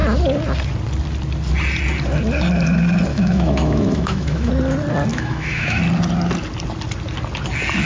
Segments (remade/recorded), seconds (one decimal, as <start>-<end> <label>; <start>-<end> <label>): 0.0-3.1 recorded; 3.1-4.5 remade; 4.5-5.1 recorded; 5.1-5.8 remade; 5.8-7.9 recorded